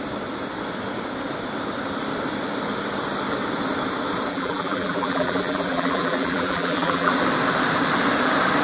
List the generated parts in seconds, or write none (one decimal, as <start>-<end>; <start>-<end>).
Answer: 4.3-7.1